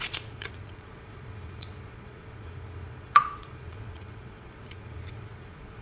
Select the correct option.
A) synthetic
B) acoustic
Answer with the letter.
A